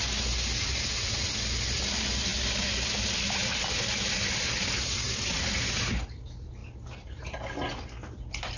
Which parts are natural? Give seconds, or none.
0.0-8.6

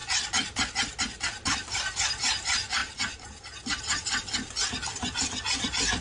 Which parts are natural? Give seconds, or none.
0.0-1.4; 2.2-6.0

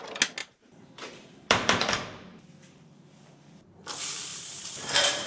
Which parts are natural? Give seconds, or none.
0.0-0.4; 2.4-4.3